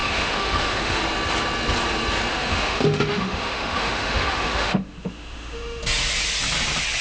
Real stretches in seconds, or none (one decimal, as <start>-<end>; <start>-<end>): 1.0-2.3; 5.8-7.0